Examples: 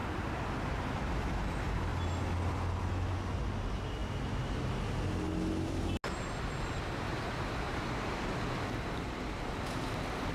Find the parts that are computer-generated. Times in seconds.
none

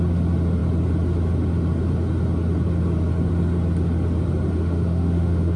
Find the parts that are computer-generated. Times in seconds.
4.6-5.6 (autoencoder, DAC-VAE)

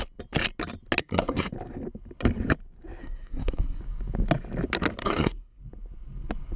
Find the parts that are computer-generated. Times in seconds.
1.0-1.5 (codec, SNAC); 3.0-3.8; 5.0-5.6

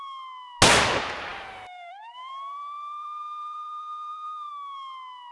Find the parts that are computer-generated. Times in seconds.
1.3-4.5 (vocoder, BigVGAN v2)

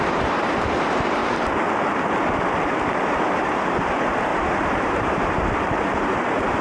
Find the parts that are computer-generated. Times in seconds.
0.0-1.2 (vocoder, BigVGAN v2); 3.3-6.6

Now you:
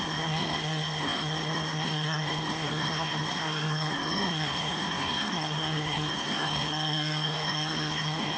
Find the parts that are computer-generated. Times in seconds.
0.0-8.4 (codec, SNAC)

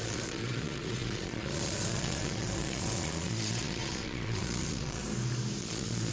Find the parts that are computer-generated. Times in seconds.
0.0-5.0 (vocoder, Vocos); 5.6-6.1

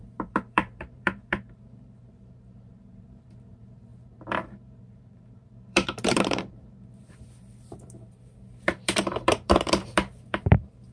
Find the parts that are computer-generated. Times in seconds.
0.0-10.9 (vocoder, BigVGAN v2)